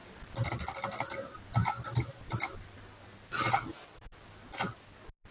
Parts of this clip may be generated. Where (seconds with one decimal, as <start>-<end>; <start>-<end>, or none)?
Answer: none